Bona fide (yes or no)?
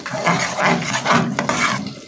yes